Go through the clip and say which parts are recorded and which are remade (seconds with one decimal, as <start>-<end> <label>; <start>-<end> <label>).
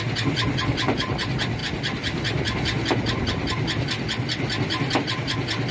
0.0-5.7 recorded